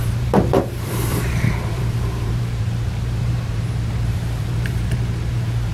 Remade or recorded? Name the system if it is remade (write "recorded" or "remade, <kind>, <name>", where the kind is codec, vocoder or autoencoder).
remade, vocoder, BigVGAN v2